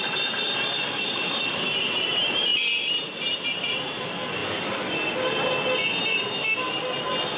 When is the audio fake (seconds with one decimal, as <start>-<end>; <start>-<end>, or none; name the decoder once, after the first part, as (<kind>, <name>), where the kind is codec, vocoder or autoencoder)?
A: 0.0-4.4 (vocoder, BigVGAN v2); 6.0-6.5